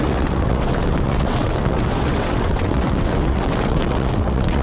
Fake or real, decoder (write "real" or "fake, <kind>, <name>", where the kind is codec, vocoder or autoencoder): fake, vocoder, WaveNeXt